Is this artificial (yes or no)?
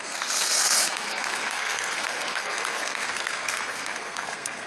yes